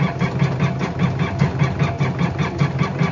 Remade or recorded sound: recorded